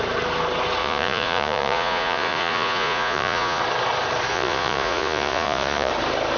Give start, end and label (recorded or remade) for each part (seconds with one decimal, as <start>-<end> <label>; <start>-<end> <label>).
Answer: 0.0-0.8 recorded; 0.8-3.6 remade; 3.6-4.3 recorded; 4.3-5.9 remade; 5.9-6.4 recorded